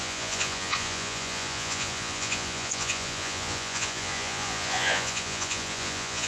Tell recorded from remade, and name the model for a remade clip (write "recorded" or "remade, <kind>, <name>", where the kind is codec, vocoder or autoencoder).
remade, vocoder, Vocos